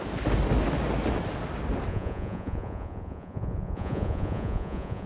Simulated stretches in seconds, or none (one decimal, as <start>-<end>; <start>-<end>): 1.9-5.1